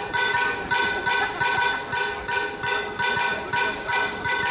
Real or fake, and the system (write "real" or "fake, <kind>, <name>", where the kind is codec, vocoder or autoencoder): real